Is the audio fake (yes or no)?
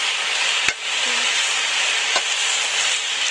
no